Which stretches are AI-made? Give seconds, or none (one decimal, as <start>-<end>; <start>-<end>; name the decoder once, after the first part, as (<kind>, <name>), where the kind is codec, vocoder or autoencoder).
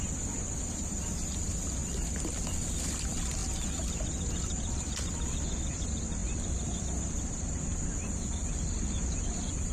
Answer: none